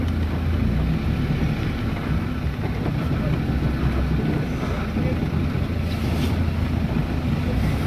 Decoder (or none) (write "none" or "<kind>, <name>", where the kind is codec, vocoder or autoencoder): none